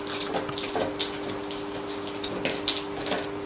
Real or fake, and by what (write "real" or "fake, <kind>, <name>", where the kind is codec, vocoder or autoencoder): real